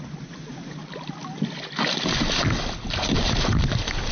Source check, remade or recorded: recorded